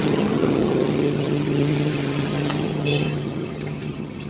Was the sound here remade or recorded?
remade